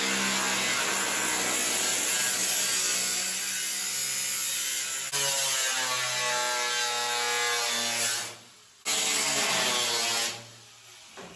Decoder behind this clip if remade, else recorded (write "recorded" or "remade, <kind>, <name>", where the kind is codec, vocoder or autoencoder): recorded